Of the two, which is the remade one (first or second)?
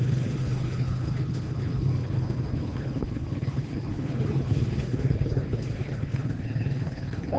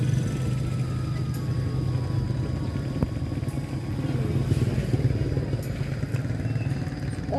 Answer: first